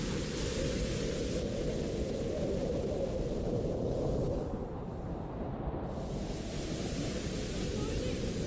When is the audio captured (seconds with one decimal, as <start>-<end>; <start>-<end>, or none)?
0.0-2.6; 5.0-8.5